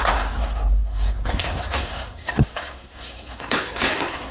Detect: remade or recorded remade